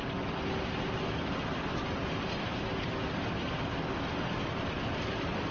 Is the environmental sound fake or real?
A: real